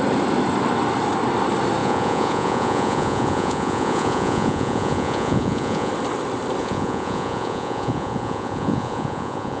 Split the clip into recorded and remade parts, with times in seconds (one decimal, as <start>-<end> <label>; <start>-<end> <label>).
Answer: 0.0-1.8 recorded; 1.8-5.9 remade; 5.9-6.6 recorded; 6.6-9.6 remade